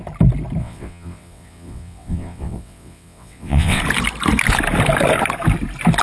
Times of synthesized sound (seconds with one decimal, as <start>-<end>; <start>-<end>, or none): 0.6-3.8